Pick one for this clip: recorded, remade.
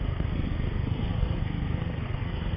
remade